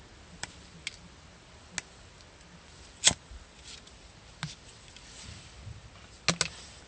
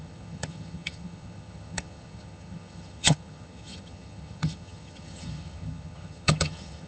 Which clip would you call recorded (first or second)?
first